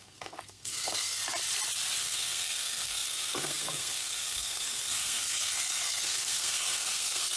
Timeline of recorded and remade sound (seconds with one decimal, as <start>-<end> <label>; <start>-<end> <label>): 0.0-1.2 remade; 1.2-2.0 recorded; 2.0-7.4 remade